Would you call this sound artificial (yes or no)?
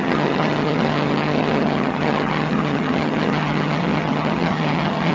yes